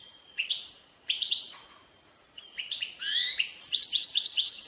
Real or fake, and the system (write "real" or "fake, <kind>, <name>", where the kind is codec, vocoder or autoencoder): fake, vocoder, Vocos